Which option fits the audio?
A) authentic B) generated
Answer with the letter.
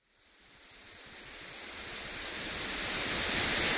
A